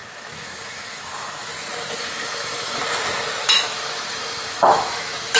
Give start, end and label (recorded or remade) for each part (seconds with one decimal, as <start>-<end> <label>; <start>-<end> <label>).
0.0-1.5 remade; 1.5-2.0 recorded; 2.0-2.8 remade; 2.8-3.4 recorded; 3.4-5.4 remade